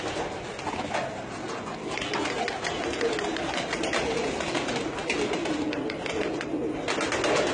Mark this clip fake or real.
real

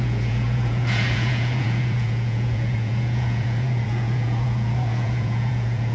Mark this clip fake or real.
fake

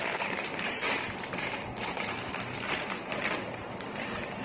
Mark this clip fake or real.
fake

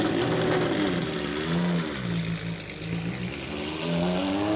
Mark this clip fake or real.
real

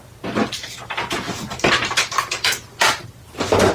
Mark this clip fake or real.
real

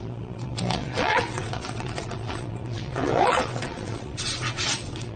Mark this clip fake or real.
fake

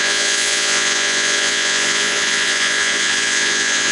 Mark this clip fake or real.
fake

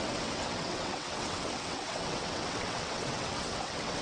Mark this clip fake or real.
fake